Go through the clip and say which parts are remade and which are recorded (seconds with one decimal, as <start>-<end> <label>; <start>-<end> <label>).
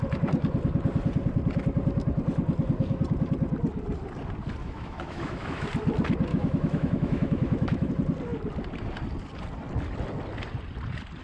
0.0-4.6 recorded; 4.6-5.7 remade; 5.7-6.3 recorded; 6.3-7.9 remade; 7.9-11.2 recorded